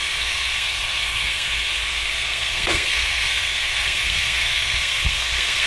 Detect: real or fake fake